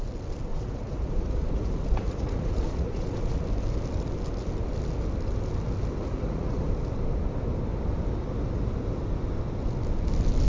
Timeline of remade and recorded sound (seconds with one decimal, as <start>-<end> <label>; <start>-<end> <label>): 0.0-0.5 recorded; 0.5-3.4 remade; 3.4-6.0 recorded; 6.0-6.7 remade; 6.7-10.5 recorded